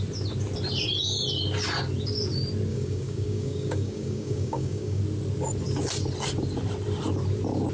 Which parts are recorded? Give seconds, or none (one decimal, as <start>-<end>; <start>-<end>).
0.0-2.7; 5.0-7.7

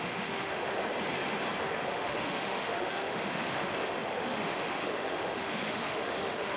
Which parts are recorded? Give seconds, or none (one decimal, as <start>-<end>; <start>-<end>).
0.8-1.6

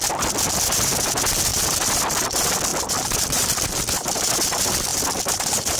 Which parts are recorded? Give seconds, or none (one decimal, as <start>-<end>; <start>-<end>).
0.0-1.5; 2.0-2.7; 4.3-4.9

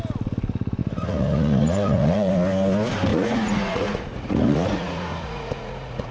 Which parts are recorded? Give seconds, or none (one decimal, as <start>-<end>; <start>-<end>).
0.0-0.8; 2.3-3.1

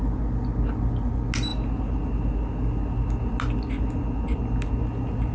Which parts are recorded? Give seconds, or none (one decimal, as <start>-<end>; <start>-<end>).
0.0-5.3

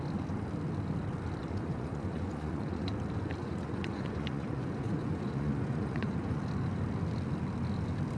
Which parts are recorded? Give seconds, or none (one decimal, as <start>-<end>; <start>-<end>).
0.0-1.4; 2.9-3.4; 6.4-8.2

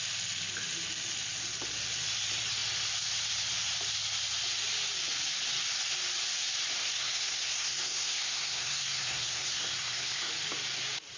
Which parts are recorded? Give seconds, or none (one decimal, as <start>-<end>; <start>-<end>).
0.0-6.8; 10.3-11.2

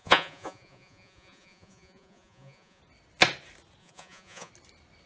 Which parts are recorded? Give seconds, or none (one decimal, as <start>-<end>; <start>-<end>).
2.8-3.8; 4.5-5.1